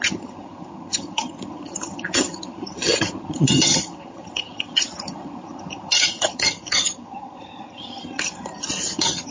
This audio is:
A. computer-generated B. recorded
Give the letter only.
A